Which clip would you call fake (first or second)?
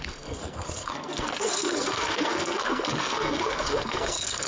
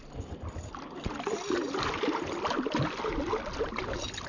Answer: first